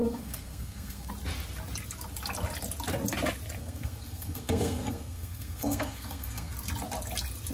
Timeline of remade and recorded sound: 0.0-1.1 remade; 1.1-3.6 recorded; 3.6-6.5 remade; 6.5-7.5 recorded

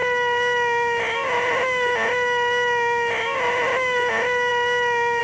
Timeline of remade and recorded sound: 0.0-5.2 recorded

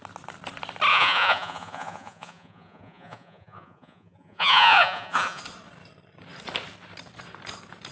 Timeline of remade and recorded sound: 0.0-0.9 recorded; 0.9-5.4 remade; 5.4-7.9 recorded

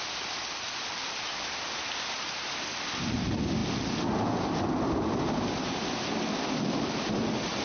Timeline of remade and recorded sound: 0.0-7.6 recorded

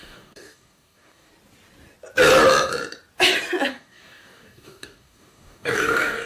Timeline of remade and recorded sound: 0.0-1.3 remade; 1.3-3.7 recorded; 3.7-6.3 remade

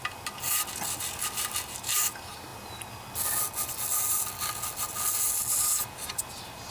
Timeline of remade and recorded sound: 0.0-6.7 recorded

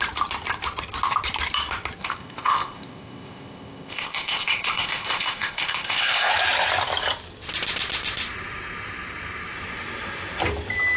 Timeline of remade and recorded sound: 0.0-2.0 recorded; 2.0-6.3 remade; 6.3-11.0 recorded

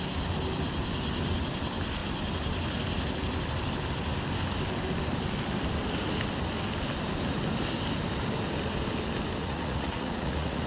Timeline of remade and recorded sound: 0.0-9.4 recorded; 9.4-10.7 remade